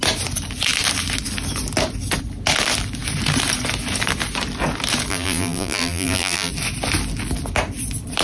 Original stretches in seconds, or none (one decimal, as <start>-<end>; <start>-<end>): 0.0-5.1; 6.5-8.2